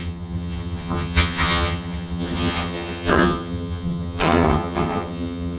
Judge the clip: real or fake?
fake